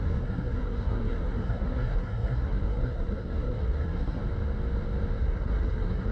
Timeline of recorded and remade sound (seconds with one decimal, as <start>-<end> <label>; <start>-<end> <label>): 0.0-4.2 remade; 4.2-5.2 recorded; 5.2-6.1 remade